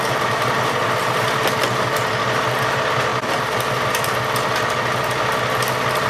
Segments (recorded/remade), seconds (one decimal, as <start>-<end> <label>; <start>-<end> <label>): 0.0-6.1 recorded